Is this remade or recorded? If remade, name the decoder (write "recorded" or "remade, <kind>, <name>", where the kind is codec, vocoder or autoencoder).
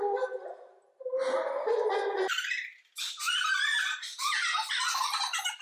recorded